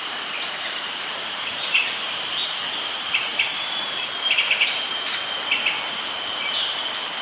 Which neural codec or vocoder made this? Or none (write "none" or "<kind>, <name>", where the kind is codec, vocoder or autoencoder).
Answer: vocoder, BigVGAN v2